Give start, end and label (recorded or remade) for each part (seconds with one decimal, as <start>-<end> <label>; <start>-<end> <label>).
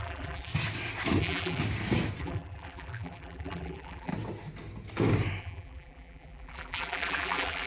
0.0-0.5 remade; 0.5-1.2 recorded; 1.2-1.6 remade; 1.6-2.2 recorded; 2.2-4.1 remade; 4.1-5.4 recorded; 5.4-7.7 remade